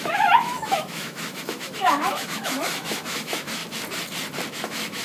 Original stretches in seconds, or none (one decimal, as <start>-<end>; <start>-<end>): 3.6-4.5